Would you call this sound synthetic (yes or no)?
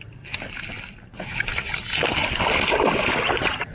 no